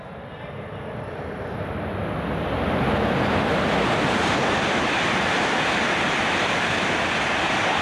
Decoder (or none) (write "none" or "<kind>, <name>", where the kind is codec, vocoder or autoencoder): none